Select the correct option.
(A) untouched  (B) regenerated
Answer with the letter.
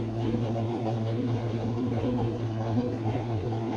B